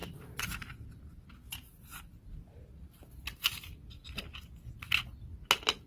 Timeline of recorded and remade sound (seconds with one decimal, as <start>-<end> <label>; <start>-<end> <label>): 0.0-5.9 recorded